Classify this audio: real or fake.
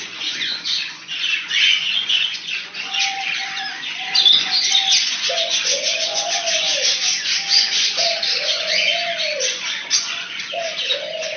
fake